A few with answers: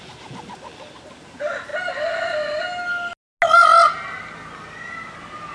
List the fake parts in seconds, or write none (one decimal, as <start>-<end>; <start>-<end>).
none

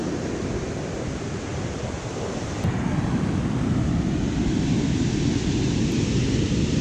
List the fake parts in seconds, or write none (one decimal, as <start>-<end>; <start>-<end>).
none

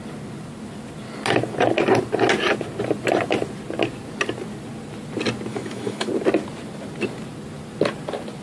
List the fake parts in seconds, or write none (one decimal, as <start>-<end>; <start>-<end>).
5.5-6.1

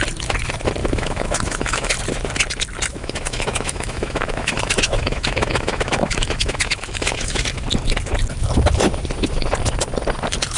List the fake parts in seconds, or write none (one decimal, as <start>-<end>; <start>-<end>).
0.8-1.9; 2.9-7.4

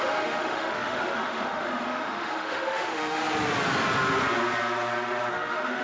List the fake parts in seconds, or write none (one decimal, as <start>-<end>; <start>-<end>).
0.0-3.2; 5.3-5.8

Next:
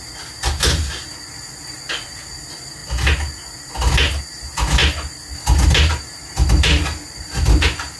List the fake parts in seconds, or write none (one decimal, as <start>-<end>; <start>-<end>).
none